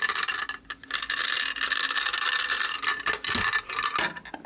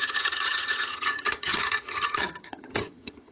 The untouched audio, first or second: first